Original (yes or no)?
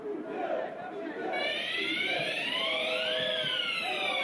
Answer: no